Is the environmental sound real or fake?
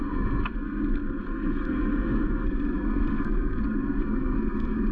fake